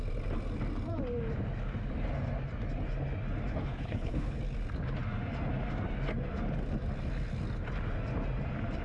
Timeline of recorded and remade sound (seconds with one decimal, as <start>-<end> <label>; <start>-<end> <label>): 0.0-3.5 recorded; 3.5-4.4 remade; 4.4-8.8 recorded